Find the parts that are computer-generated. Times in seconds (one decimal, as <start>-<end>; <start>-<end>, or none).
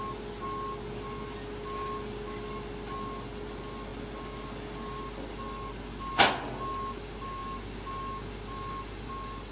none